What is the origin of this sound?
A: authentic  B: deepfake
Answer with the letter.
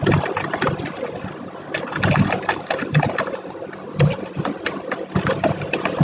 A